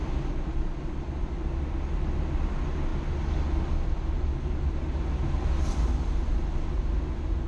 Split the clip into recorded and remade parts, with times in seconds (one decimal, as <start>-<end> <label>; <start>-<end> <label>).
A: 0.0-7.5 recorded